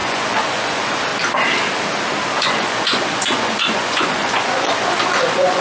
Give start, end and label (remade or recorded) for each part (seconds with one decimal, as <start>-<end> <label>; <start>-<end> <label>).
0.0-1.1 remade; 1.1-2.4 recorded; 2.4-5.6 remade